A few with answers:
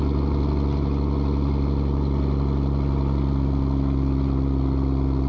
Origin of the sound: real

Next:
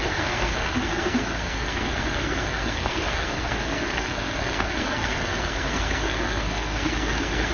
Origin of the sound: fake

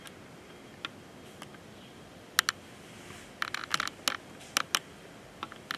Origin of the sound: real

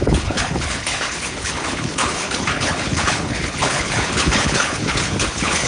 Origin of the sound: fake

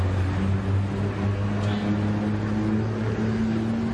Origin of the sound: real